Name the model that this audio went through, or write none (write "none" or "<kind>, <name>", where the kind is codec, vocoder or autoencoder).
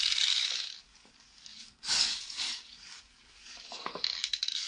codec, DAC